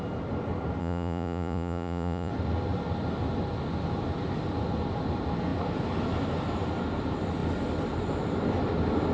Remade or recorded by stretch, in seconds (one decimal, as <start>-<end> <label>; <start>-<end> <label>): 0.0-0.8 recorded; 0.8-2.3 remade; 2.3-9.1 recorded